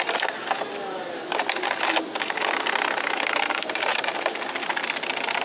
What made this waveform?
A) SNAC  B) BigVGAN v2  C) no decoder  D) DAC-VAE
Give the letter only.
C